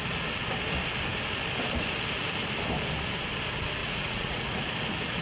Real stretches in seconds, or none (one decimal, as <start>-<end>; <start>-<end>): 0.0-3.8; 4.7-5.2